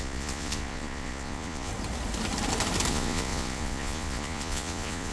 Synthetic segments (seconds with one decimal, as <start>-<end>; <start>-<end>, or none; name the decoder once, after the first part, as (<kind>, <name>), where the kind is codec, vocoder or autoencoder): 0.0-1.7 (vocoder, Vocos); 2.9-5.1